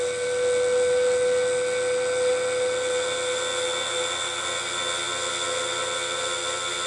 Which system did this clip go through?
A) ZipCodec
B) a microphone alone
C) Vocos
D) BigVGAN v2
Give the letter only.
B